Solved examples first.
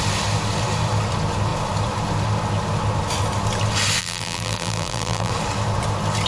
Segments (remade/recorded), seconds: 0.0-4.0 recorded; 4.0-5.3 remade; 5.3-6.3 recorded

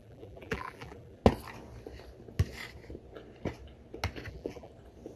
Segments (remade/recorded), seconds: 0.0-1.2 remade; 1.2-4.3 recorded; 4.3-4.7 remade; 4.7-5.2 recorded

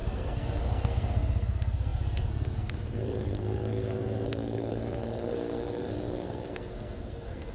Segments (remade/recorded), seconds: 0.0-7.5 remade